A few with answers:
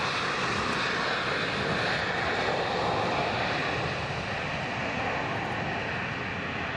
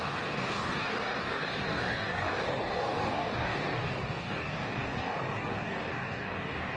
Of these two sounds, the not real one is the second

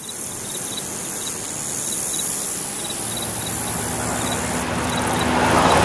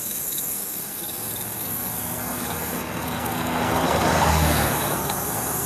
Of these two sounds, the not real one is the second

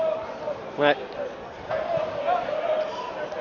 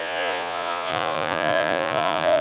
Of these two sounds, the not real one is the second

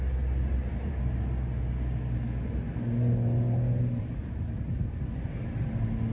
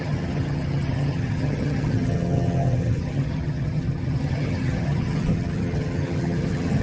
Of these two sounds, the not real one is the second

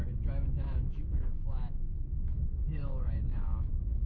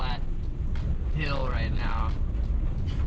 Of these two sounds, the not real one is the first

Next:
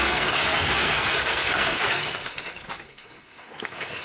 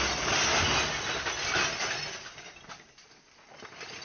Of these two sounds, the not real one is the first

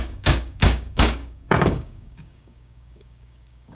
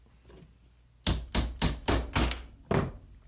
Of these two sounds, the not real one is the first